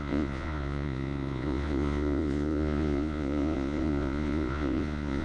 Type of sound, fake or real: fake